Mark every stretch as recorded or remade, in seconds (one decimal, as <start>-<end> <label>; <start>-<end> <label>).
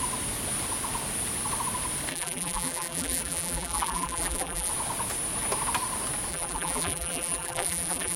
0.0-2.1 recorded; 2.1-4.7 remade; 4.7-6.3 recorded; 6.3-8.2 remade